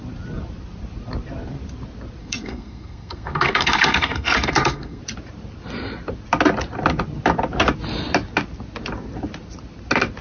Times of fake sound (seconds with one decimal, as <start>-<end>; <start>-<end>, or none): 2.2-5.0